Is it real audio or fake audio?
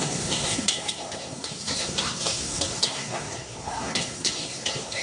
fake